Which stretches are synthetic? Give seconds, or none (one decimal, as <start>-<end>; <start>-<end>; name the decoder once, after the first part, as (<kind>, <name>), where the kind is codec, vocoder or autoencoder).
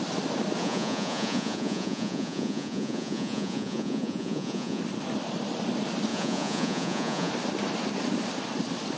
0.6-4.8 (vocoder, Vocos); 6.1-7.3